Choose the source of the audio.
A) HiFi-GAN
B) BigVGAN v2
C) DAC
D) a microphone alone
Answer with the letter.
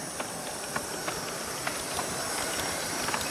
D